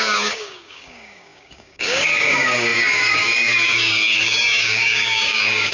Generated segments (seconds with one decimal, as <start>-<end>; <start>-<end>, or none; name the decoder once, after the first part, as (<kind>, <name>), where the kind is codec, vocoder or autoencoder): 0.0-5.7 (codec, DAC)